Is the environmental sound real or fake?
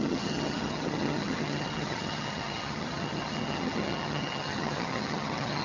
fake